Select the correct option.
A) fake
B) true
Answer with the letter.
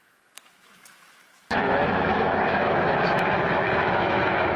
A